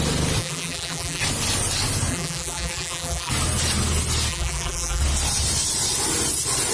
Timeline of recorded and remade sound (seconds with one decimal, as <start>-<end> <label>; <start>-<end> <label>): 0.0-0.4 recorded; 0.4-1.2 remade; 1.2-2.1 recorded; 2.1-3.3 remade; 3.3-4.3 recorded; 4.3-5.0 remade; 5.0-6.7 recorded